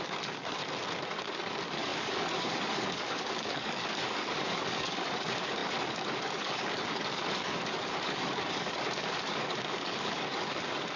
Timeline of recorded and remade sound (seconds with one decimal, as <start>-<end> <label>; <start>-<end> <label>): 0.0-0.6 remade; 0.6-1.1 recorded; 1.1-11.0 remade